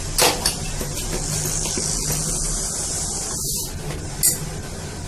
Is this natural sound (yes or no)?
yes